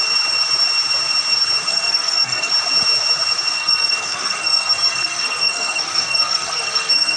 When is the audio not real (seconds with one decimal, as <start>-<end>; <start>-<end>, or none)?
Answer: 1.7-2.5; 3.6-7.2